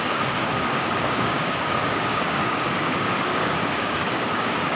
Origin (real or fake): fake